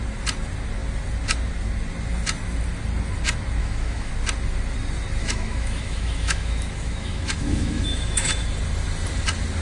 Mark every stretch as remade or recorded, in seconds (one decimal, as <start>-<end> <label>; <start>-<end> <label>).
0.0-3.6 recorded; 3.6-4.1 remade; 4.1-5.2 recorded; 5.2-8.4 remade; 8.4-9.6 recorded